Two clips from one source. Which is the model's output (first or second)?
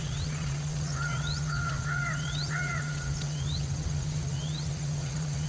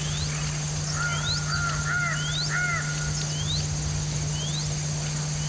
first